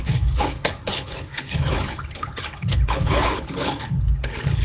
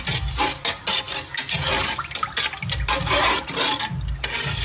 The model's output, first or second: first